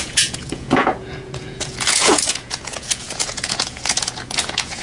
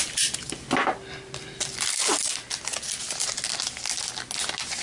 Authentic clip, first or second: second